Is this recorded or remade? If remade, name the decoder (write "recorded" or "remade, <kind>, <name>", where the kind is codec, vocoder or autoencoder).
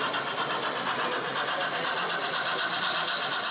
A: recorded